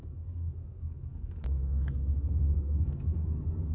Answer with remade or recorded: remade